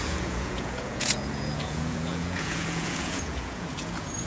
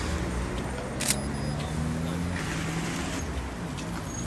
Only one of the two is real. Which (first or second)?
second